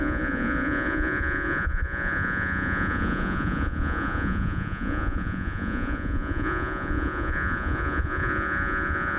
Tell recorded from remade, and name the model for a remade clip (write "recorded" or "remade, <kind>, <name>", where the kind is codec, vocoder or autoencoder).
remade, vocoder, Vocos